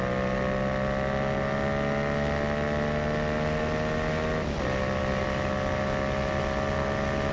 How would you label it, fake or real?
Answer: real